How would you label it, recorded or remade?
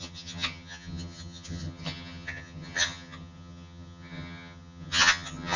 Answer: remade